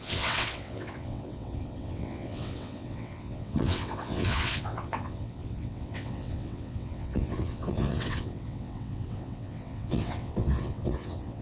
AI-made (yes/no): yes